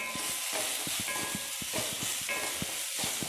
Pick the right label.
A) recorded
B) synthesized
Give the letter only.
A